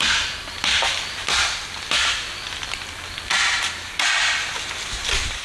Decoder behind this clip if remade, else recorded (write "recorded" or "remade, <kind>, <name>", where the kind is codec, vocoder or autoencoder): recorded